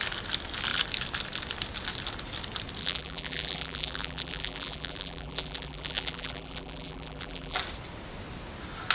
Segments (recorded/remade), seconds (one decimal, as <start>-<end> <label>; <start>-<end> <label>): 0.0-2.8 recorded; 2.8-7.6 remade; 7.6-8.9 recorded